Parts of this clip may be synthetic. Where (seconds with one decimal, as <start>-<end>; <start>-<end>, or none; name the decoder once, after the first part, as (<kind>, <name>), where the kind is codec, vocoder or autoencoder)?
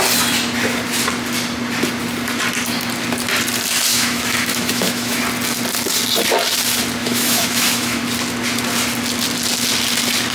3.9-5.2 (autoencoder, DAC-VAE); 7.0-8.0